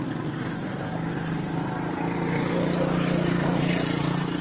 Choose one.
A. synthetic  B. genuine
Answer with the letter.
B